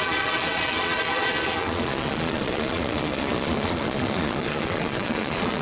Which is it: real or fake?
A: fake